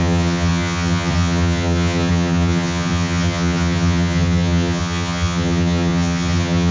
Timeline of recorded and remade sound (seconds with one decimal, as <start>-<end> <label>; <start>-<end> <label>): 0.0-6.7 remade